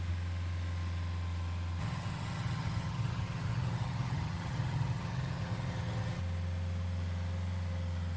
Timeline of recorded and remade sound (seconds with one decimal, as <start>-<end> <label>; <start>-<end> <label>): 0.0-1.8 recorded; 1.8-6.2 remade; 6.2-8.2 recorded